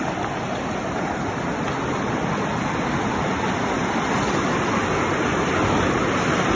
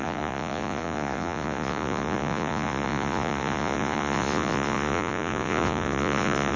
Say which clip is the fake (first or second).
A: second